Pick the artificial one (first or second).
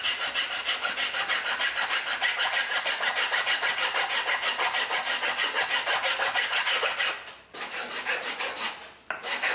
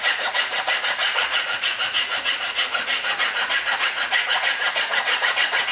second